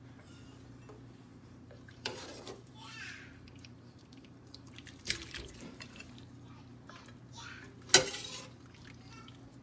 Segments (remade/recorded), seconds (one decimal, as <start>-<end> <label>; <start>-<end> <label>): 0.0-1.3 recorded; 1.3-6.1 remade; 6.1-9.6 recorded